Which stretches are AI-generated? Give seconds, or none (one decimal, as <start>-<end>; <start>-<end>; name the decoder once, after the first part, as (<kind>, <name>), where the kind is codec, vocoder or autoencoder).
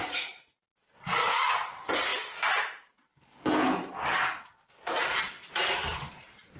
0.0-0.7 (vocoder, Vocos); 1.3-2.1; 6.1-6.6